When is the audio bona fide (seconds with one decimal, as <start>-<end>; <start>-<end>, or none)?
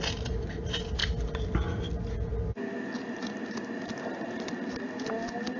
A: 0.0-5.6